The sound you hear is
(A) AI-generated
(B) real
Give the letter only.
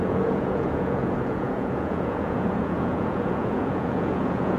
A